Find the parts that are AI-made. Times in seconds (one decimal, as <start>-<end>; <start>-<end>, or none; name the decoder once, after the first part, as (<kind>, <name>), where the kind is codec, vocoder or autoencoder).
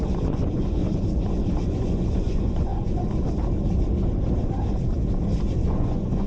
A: 0.0-0.8 (vocoder, Vocos); 1.5-2.7; 5.7-6.3